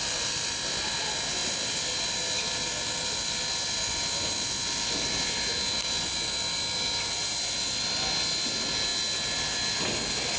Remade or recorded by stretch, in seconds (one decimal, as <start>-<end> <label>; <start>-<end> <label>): 0.0-10.4 recorded

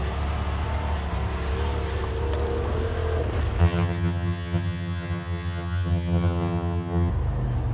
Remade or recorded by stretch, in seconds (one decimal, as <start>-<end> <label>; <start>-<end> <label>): 0.0-3.6 recorded; 3.6-7.1 remade; 7.1-7.7 recorded

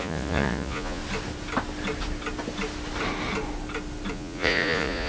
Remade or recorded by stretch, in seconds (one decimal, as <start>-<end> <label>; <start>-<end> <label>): 0.0-1.0 remade; 1.0-4.1 recorded; 4.1-5.1 remade

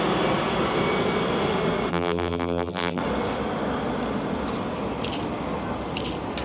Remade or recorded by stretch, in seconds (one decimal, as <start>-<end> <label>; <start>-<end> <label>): 0.0-1.9 recorded; 1.9-3.0 remade; 3.0-6.4 recorded

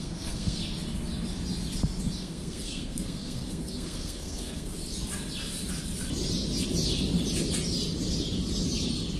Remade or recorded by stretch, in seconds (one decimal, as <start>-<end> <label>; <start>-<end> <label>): 0.0-0.6 remade; 0.6-2.2 recorded; 2.2-4.8 remade; 4.8-9.2 recorded

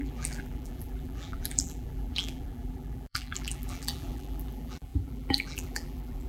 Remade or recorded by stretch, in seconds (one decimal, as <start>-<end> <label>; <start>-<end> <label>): 0.0-6.3 remade